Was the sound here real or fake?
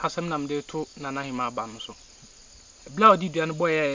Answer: real